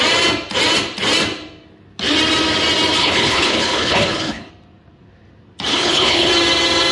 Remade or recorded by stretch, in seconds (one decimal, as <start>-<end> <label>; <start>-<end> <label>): 0.0-3.0 recorded; 3.0-4.5 remade; 4.5-5.7 recorded; 5.7-6.3 remade; 6.3-6.9 recorded

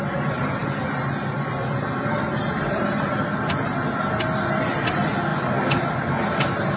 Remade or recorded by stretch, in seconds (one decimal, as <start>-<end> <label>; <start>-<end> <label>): 0.0-6.8 recorded

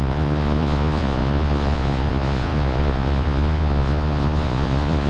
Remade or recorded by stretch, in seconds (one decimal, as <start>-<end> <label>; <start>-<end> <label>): 0.0-5.1 remade

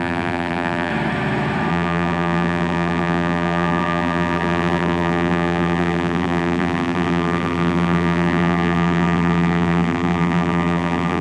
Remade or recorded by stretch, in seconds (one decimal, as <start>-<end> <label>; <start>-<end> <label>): 0.0-0.9 remade; 0.9-1.7 recorded; 1.7-11.2 remade

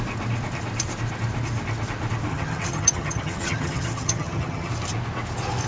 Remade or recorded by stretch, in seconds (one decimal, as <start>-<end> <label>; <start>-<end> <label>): 0.0-2.3 recorded; 2.3-4.7 remade; 4.7-5.7 recorded

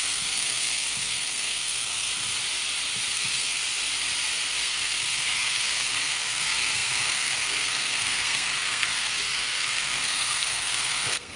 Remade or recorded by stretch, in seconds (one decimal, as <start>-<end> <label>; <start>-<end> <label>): 0.0-2.1 remade; 2.1-3.1 recorded; 3.1-3.6 remade; 3.6-4.5 recorded; 4.5-11.4 remade

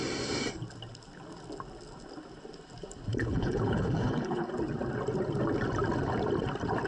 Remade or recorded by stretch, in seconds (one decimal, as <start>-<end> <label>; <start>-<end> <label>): 0.0-3.1 recorded; 3.1-4.5 remade; 4.5-6.9 recorded

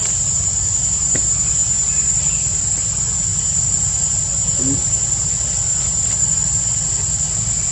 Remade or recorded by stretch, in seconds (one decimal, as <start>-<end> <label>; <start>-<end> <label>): 0.0-3.3 recorded; 3.3-4.9 remade; 4.9-5.7 recorded; 5.7-6.6 remade; 6.6-7.7 recorded